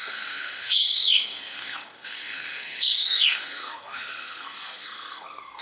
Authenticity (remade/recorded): remade